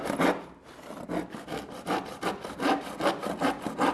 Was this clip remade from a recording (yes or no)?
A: no